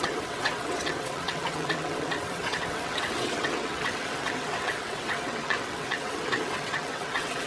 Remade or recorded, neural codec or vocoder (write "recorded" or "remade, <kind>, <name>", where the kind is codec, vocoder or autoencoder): remade, vocoder, WaveNeXt